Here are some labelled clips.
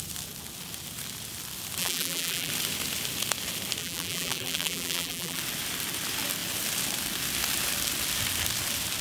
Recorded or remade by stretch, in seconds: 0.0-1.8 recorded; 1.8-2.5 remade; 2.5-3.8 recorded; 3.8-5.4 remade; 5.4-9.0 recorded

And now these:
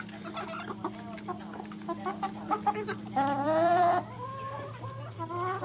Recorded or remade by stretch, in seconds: 0.0-2.1 recorded; 2.1-5.0 remade; 5.0-5.6 recorded

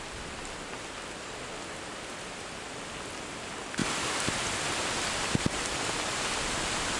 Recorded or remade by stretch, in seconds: 0.0-3.8 recorded; 3.8-7.0 remade